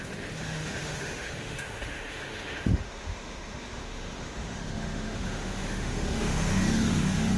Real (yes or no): no